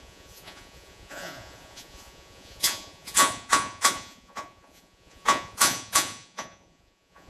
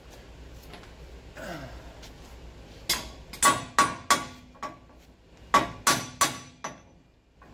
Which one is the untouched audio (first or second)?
second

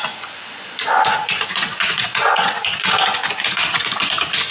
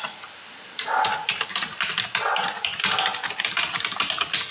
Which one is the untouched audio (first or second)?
second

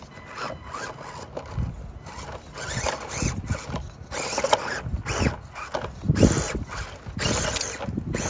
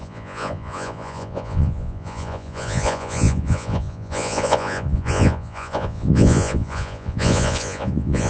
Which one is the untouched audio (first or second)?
first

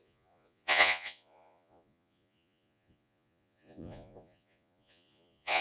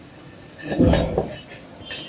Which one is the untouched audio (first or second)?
second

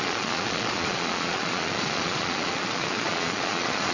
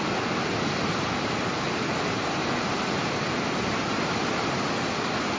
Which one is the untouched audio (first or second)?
second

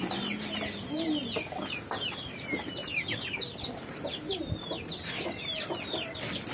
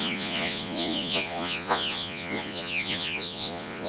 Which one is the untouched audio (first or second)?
first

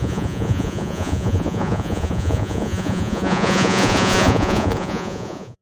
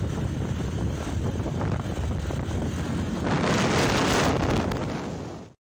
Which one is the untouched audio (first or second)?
second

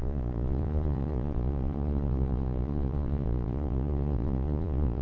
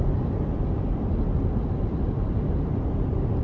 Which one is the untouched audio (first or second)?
second